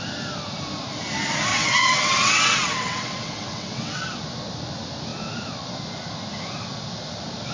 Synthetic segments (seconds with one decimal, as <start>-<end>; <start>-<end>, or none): 1.5-4.0